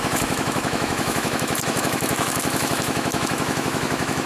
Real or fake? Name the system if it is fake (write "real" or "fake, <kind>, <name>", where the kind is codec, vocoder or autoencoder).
fake, autoencoder, DAC-VAE